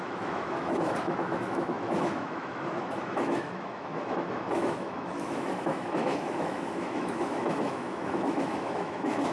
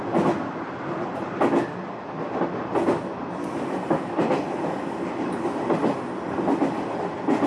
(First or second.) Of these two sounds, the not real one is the first